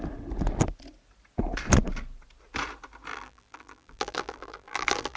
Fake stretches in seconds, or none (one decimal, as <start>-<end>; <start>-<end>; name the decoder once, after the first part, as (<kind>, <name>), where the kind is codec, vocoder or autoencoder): 3.1-5.2 (vocoder, BigVGAN v2)